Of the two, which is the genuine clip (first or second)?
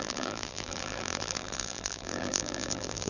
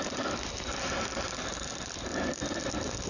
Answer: second